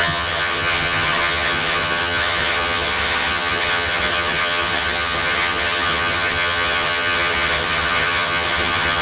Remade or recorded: remade